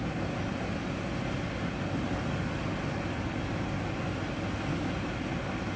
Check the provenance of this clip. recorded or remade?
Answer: recorded